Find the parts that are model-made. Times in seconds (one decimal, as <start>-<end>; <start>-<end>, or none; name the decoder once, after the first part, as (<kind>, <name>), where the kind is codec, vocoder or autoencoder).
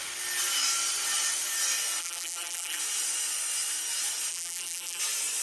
2.0-2.8 (vocoder, BigVGAN v2); 4.3-5.0